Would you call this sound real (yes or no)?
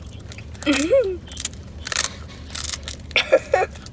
yes